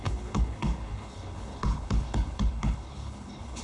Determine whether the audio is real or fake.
fake